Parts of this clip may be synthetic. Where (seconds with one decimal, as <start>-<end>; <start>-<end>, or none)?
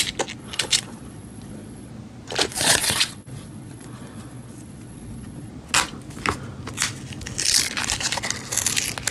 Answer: 0.4-1.9; 2.5-5.5